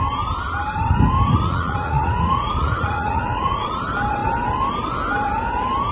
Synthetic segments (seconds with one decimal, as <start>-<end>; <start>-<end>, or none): 1.3-3.8